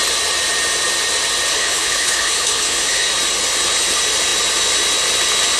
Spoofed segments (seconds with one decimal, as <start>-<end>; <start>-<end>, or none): 1.5-3.1